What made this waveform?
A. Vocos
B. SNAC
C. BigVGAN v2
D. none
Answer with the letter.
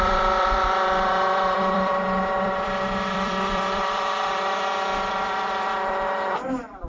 C